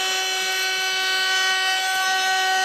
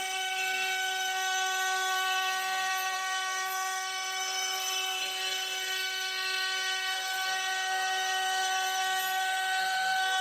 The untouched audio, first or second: first